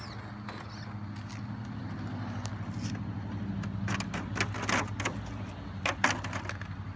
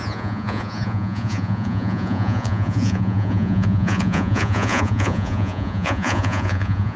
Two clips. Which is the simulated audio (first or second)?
second